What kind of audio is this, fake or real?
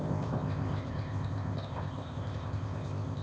fake